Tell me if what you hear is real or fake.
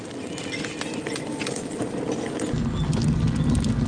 real